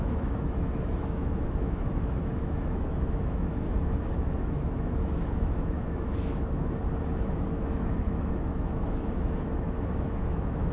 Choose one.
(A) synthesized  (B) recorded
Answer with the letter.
A